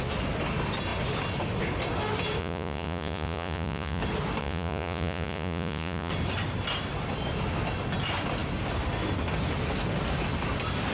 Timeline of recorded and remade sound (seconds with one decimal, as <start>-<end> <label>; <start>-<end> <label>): 0.0-2.4 recorded; 2.4-4.0 remade; 4.0-4.4 recorded; 4.4-6.1 remade; 6.1-10.9 recorded